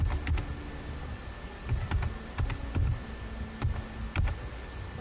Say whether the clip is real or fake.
real